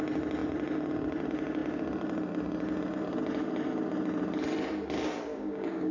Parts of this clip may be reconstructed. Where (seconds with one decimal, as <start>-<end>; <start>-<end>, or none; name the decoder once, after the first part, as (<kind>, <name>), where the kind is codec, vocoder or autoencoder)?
5.3-5.9 (codec, DAC)